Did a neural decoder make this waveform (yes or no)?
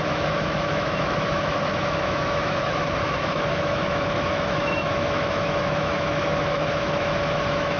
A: yes